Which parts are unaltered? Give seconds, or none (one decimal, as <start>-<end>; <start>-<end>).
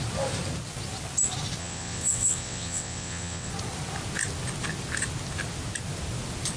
0.0-1.6; 3.5-6.6